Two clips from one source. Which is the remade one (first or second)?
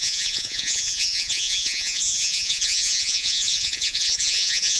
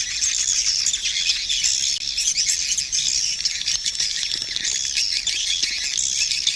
first